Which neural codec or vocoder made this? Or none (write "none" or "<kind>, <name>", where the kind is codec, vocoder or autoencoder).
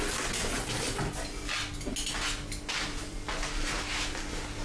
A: none